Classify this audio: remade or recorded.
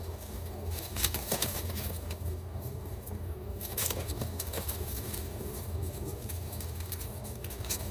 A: remade